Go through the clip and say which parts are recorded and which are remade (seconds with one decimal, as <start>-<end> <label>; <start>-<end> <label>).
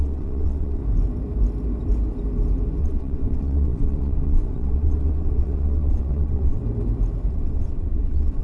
0.0-0.8 remade; 0.8-2.8 recorded; 2.8-6.6 remade; 6.6-7.3 recorded; 7.3-8.4 remade